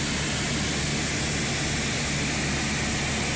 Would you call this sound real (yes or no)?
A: yes